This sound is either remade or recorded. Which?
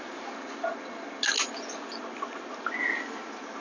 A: recorded